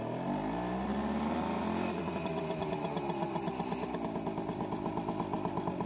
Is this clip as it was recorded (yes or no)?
yes